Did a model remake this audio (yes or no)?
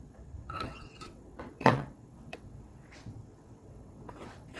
yes